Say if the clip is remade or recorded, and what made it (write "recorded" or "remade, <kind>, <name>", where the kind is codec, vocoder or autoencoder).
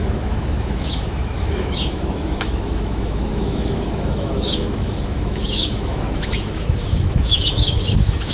remade, autoencoder, DAC-VAE